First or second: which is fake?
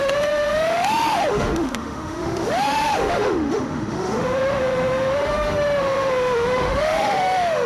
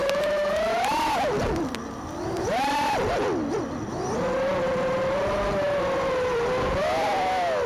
first